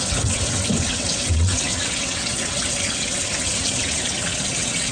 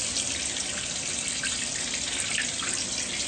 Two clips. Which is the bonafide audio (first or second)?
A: second